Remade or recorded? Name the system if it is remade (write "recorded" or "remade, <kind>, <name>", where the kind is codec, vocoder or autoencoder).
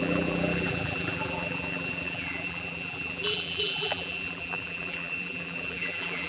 remade, vocoder, BigVGAN v2